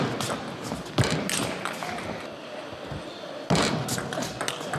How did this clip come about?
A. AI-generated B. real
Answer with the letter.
B